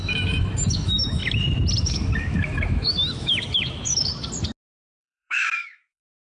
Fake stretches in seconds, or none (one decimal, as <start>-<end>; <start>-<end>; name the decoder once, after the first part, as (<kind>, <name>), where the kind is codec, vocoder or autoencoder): 0.0-1.2 (autoencoder, DAC-VAE); 1.8-4.1; 4.9-6.4